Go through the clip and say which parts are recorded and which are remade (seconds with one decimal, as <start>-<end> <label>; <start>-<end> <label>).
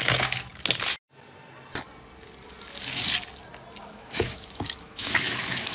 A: 0.0-0.5 remade; 0.5-3.9 recorded; 3.9-5.7 remade